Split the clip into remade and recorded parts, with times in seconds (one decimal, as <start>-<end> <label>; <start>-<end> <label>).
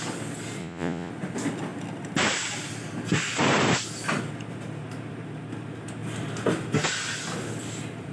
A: 0.0-0.6 recorded; 0.6-1.1 remade; 1.1-8.1 recorded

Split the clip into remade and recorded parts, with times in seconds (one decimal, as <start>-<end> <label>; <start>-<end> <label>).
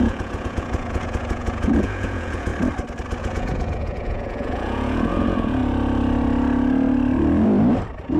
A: 0.0-2.5 remade; 2.5-3.2 recorded; 3.2-5.6 remade; 5.6-8.2 recorded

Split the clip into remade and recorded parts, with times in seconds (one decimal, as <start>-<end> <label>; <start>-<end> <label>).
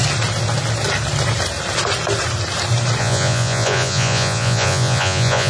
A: 0.0-3.0 recorded; 3.0-5.5 remade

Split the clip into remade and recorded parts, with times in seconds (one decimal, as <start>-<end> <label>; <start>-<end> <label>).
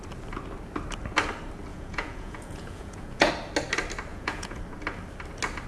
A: 0.0-1.7 recorded; 1.7-3.3 remade; 3.3-4.1 recorded; 4.1-4.6 remade; 4.6-5.7 recorded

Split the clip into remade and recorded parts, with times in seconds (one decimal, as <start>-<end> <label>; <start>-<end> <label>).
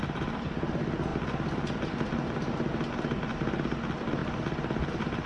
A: 0.0-5.3 recorded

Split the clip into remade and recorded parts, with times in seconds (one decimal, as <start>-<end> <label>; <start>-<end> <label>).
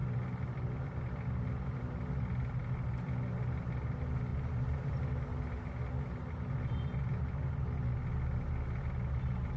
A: 0.0-9.6 recorded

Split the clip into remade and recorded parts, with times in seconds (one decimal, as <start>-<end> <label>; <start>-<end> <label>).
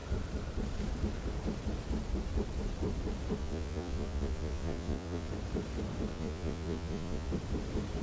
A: 0.0-3.4 recorded; 3.4-5.3 remade; 5.3-6.1 recorded; 6.1-7.3 remade; 7.3-8.0 recorded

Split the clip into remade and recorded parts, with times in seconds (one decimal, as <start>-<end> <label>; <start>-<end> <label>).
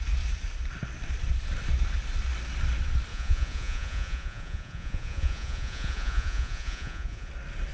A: 0.0-3.1 recorded; 3.1-7.3 remade; 7.3-7.7 recorded